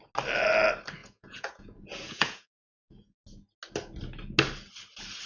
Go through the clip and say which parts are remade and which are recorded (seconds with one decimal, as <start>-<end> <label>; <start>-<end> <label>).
0.0-1.0 recorded; 1.0-3.2 remade; 3.2-5.3 recorded